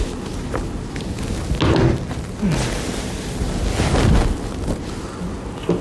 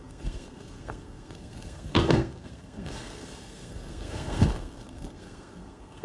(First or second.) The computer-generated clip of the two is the second